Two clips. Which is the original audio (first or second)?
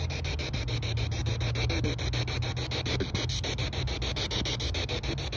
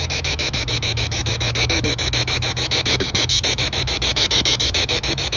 first